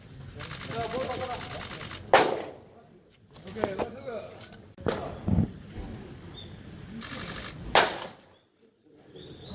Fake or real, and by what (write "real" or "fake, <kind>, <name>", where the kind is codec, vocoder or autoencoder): real